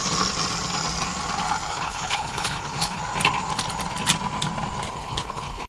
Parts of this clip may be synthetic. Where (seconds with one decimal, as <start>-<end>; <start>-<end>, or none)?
1.7-3.0; 4.9-5.7